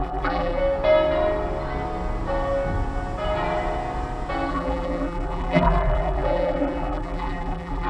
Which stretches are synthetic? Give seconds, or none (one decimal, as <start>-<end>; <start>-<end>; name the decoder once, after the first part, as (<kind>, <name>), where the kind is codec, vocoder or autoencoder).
0.0-0.6 (vocoder, BigVGAN v2); 4.5-7.9

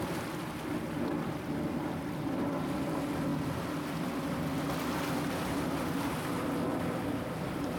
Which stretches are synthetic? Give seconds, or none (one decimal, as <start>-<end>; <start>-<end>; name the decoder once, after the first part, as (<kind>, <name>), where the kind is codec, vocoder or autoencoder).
none

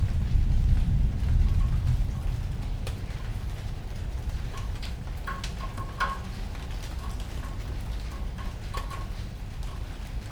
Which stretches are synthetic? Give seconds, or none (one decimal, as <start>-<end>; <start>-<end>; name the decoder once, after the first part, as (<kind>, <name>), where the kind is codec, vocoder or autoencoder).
3.3-4.9 (vocoder, BigVGAN v2)